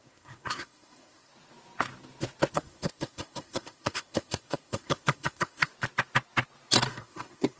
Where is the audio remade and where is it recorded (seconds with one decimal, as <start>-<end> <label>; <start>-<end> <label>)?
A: 0.0-1.3 remade; 1.3-2.5 recorded; 2.5-5.7 remade; 5.7-6.9 recorded; 6.9-7.6 remade